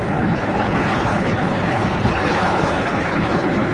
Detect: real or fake fake